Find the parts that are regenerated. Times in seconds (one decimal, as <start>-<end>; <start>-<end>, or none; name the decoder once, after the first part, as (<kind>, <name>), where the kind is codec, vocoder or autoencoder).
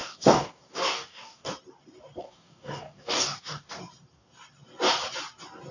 0.0-1.5 (codec, DAC); 2.2-3.8